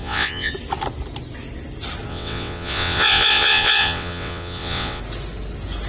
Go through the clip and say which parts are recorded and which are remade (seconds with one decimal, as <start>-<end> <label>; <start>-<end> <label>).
0.0-0.5 remade; 0.5-2.1 recorded; 2.1-5.0 remade; 5.0-5.9 recorded